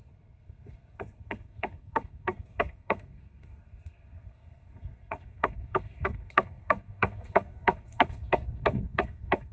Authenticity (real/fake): fake